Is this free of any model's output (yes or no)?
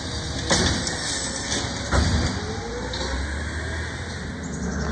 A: yes